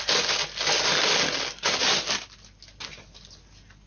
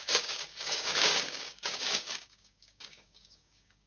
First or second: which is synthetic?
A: second